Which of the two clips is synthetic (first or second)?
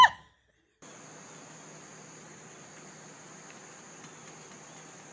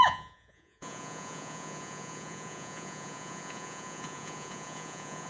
second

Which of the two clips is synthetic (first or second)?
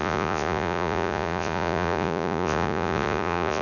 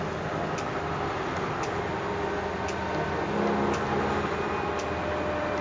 first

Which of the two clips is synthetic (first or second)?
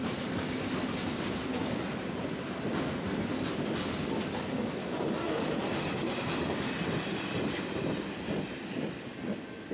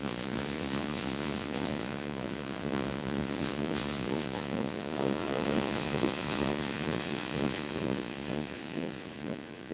second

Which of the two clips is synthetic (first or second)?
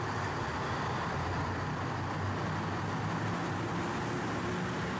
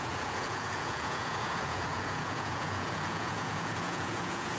second